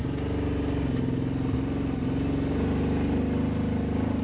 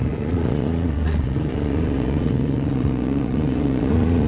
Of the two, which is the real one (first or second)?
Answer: first